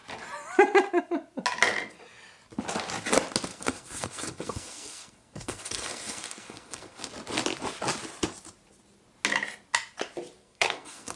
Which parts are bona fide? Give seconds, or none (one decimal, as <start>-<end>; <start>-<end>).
0.0-3.5; 7.1-10.4